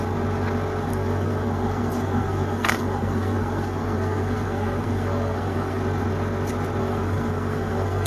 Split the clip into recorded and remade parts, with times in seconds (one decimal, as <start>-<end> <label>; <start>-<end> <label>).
0.0-0.9 recorded; 0.9-5.8 remade; 5.8-6.8 recorded; 6.8-8.1 remade

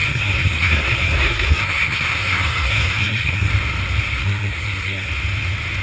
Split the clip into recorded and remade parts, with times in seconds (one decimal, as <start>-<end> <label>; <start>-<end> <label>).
0.0-3.5 remade; 3.5-4.2 recorded; 4.2-5.1 remade; 5.1-5.8 recorded

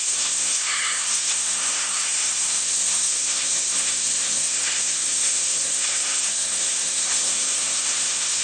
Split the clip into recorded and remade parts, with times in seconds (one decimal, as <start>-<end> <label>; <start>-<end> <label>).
0.0-8.4 remade

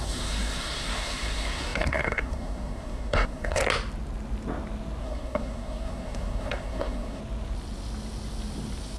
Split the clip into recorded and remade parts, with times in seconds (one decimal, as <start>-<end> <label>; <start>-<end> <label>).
0.0-3.6 remade; 3.6-5.0 recorded; 5.0-7.2 remade; 7.2-9.0 recorded

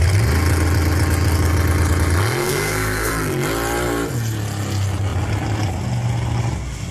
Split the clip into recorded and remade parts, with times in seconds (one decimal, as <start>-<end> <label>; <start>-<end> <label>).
0.0-2.4 recorded; 2.4-3.1 remade; 3.1-6.9 recorded